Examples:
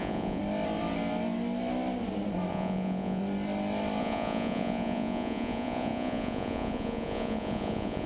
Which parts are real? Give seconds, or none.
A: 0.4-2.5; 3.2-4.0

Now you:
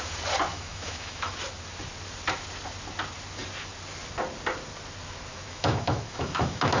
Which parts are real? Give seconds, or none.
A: 0.0-0.5; 1.3-5.3

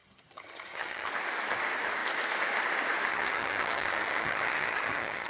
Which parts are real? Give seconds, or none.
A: 1.1-3.1